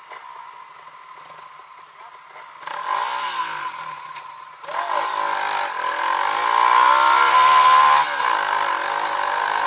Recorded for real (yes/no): yes